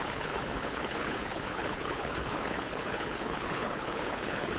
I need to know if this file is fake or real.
fake